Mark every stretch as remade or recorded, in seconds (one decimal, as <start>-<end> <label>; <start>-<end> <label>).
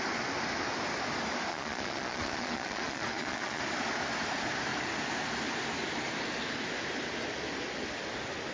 0.0-1.5 recorded; 1.5-3.6 remade; 3.6-8.5 recorded